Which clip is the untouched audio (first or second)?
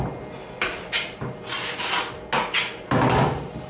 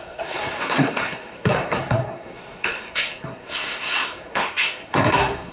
first